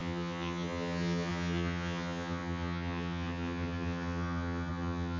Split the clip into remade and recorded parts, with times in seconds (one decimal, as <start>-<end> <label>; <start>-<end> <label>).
0.0-5.2 remade